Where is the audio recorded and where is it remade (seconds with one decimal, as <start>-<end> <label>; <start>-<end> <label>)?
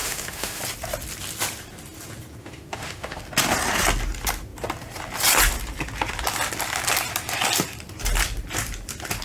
0.0-0.6 remade; 0.6-2.4 recorded; 2.4-3.2 remade; 3.2-9.2 recorded